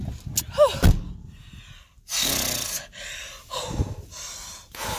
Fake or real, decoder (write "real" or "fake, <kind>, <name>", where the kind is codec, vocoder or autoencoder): real